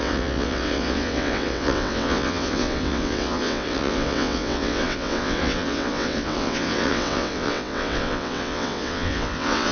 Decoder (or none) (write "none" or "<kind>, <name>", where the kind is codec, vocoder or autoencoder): vocoder, WaveNeXt